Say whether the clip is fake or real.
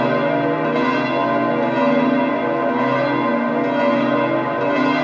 real